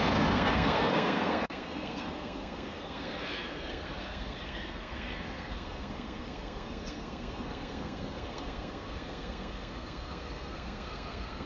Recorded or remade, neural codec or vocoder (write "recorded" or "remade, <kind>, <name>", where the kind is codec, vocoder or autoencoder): remade, codec, SNAC